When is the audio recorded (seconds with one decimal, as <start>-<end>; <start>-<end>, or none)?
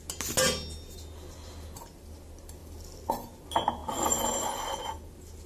0.0-5.5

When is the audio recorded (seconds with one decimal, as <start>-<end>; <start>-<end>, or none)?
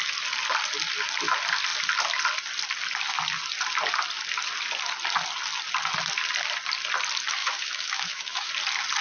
0.0-7.4; 8.5-9.0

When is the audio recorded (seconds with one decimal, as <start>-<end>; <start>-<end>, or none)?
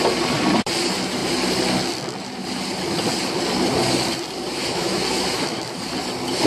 0.0-4.6; 5.8-6.5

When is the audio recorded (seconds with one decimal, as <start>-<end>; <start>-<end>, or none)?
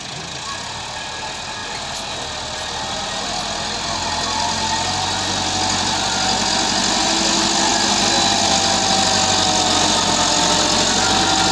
0.0-11.5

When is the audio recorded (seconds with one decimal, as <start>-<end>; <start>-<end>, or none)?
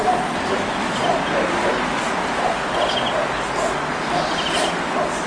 0.0-5.3